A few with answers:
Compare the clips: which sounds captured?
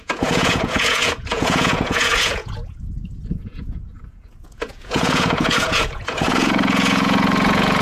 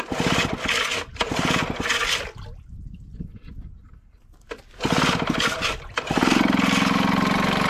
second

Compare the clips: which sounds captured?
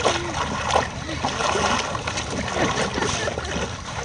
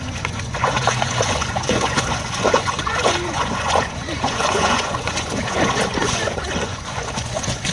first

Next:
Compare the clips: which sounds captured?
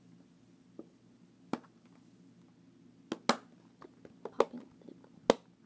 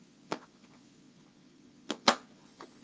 first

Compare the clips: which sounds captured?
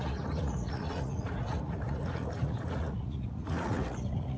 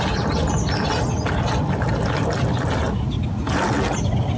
second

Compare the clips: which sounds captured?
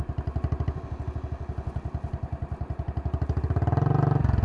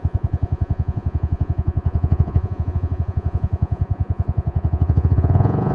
first